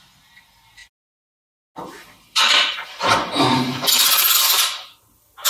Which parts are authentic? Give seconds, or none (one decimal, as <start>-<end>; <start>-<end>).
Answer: 0.0-5.5